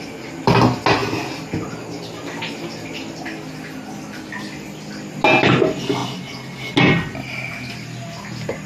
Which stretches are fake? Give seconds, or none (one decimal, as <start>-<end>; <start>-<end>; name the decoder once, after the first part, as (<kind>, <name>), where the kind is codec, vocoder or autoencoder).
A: none